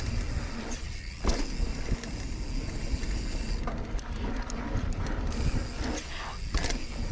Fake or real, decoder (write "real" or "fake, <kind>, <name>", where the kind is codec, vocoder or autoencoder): real